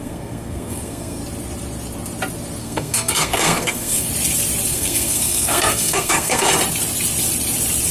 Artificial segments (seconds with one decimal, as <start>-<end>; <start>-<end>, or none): 0.0-1.2; 2.6-4.1; 4.7-6.5